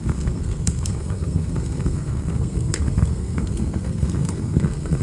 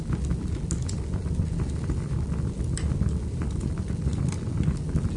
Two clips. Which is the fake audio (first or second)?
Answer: first